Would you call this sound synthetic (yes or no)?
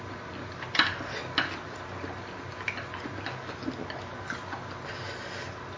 no